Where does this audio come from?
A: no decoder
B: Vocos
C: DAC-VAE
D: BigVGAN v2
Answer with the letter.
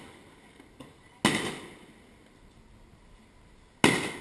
A